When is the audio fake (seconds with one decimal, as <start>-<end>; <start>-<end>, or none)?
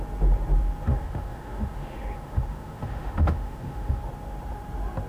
0.9-4.0